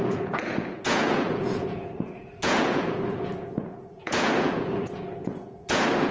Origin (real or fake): fake